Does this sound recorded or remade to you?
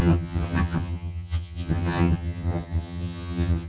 remade